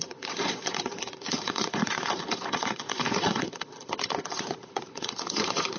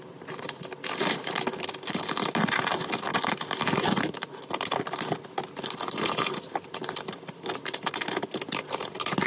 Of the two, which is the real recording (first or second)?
second